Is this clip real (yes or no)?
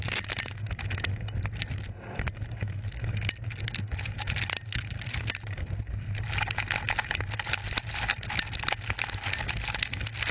yes